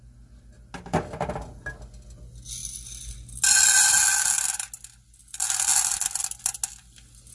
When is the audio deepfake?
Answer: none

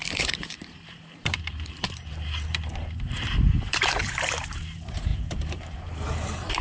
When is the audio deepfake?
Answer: 0.0-6.6 (vocoder, BigVGAN v2)

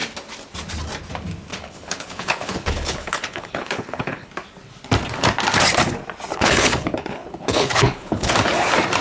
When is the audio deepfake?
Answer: 1.5-4.3 (codec, HILCodec); 6.3-8.3

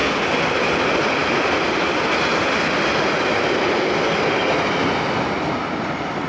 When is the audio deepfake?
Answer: none

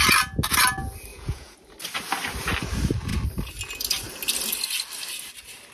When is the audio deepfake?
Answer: 1.1-1.6 (vocoder, Vocos)

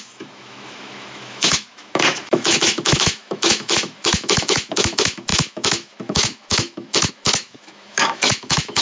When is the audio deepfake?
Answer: 0.0-8.8 (autoencoder, DAC-VAE)